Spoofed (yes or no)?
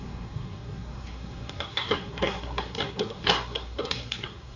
yes